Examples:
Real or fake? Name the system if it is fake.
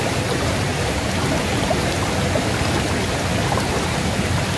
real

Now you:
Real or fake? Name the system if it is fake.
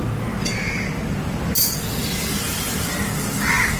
real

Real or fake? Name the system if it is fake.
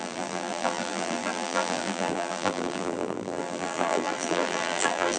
fake, vocoder, BigVGAN v2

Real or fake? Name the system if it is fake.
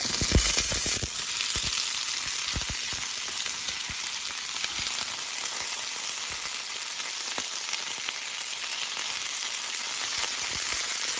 real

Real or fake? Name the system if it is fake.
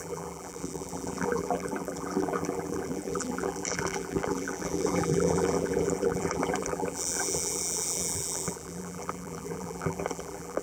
fake, vocoder, BigVGAN v2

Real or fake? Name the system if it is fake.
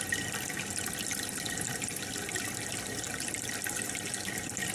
real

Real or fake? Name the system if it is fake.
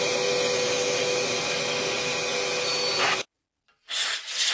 real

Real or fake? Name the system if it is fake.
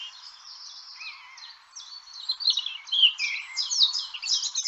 real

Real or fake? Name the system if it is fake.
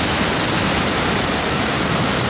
real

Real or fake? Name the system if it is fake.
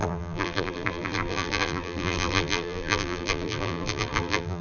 fake, vocoder, BigVGAN v2